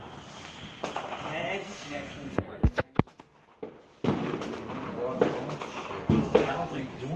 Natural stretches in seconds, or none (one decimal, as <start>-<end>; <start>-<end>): 0.0-1.6; 3.5-6.0; 6.8-7.2